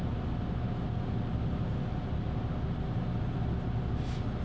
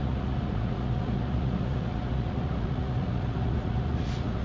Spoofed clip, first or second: second